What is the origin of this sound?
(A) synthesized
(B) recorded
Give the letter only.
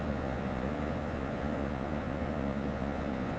A